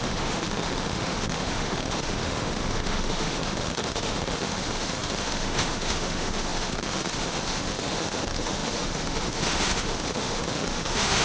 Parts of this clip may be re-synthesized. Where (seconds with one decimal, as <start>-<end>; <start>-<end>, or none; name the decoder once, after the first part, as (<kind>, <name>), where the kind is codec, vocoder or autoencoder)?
0.0-11.2 (autoencoder, DAC-VAE)